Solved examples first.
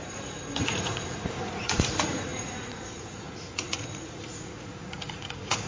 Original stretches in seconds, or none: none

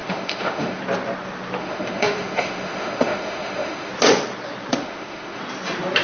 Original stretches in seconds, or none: 0.8-1.6; 3.9-4.8; 5.4-6.0

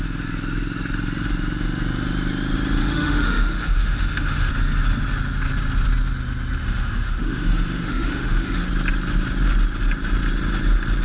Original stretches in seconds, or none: 0.0-2.8; 4.5-6.6; 8.7-11.0

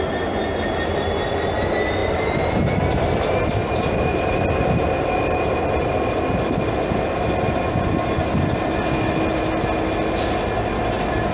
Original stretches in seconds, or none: 0.0-11.3

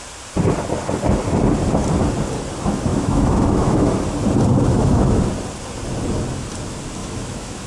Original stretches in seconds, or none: 0.0-2.9; 3.9-4.7; 5.2-7.0

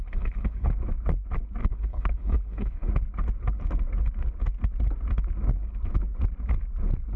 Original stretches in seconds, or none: 0.7-1.6; 2.9-7.2

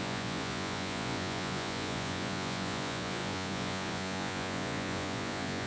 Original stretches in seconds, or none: none

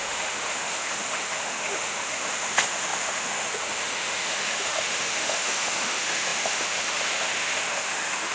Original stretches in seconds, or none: none